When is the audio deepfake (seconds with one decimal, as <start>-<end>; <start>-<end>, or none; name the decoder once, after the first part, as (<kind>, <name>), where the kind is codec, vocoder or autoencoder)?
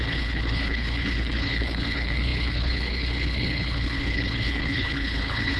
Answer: 0.0-5.6 (codec, HILCodec)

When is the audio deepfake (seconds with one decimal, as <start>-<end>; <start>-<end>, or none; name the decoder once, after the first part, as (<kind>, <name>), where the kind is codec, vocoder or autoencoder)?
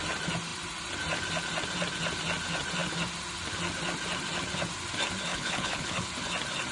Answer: 5.3-6.1 (codec, HILCodec)